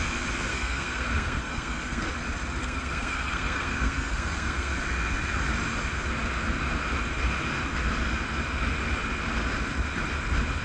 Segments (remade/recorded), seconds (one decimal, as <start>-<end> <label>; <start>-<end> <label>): 0.0-0.5 recorded; 0.5-2.1 remade; 2.1-2.6 recorded; 2.6-4.7 remade; 4.7-10.6 recorded